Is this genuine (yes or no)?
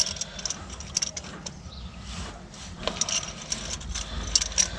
yes